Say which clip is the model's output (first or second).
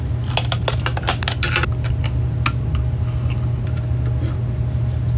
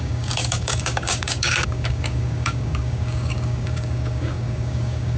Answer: second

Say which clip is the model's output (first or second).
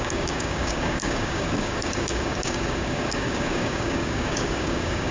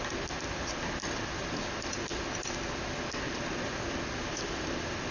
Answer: first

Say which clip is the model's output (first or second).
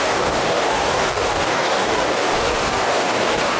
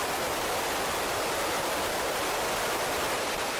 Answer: first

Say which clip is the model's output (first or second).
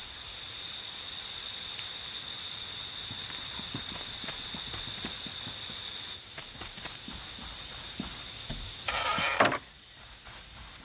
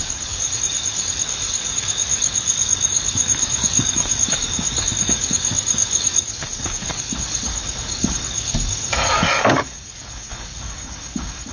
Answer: second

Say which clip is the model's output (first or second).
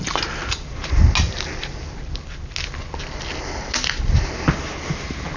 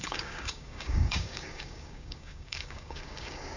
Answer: second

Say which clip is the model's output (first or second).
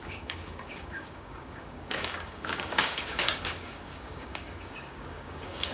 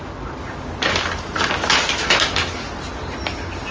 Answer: first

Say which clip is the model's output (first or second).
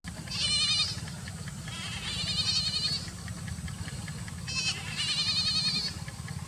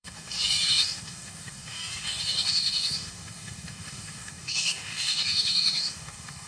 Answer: second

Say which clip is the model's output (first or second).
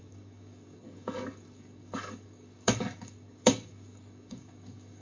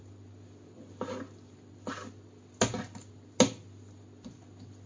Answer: first